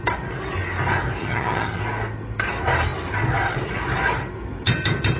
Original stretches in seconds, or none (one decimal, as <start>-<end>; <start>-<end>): 0.0-1.2; 1.8-5.2